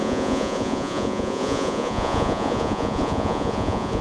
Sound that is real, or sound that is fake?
fake